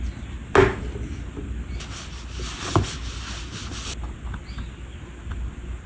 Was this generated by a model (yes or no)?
no